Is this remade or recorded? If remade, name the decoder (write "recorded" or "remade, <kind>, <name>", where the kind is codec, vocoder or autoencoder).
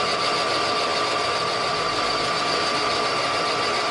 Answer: recorded